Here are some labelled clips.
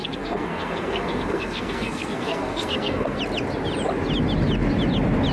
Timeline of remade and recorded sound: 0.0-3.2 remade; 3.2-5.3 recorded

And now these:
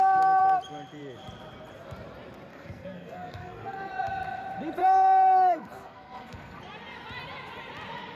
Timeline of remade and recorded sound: 0.0-2.5 recorded; 2.5-3.9 remade; 3.9-4.8 recorded; 4.8-6.6 remade; 6.6-8.2 recorded